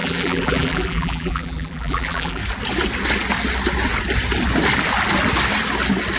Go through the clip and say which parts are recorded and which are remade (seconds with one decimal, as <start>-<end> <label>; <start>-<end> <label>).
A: 0.0-2.4 remade; 2.4-6.2 recorded